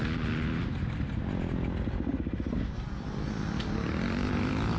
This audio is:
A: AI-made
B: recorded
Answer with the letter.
B